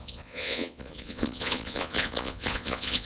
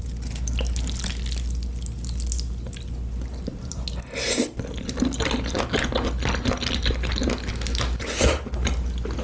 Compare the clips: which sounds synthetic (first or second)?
first